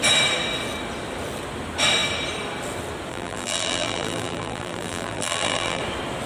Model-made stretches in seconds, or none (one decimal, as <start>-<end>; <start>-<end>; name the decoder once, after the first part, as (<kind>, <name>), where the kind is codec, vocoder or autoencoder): 3.1-5.8 (vocoder, BigVGAN v2)